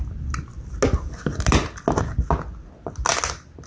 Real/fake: real